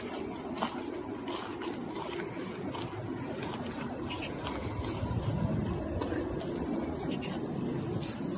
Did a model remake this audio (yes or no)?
no